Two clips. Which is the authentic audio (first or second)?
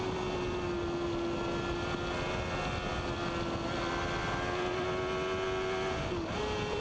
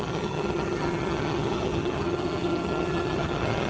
first